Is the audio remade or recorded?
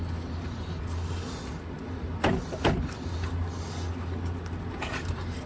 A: recorded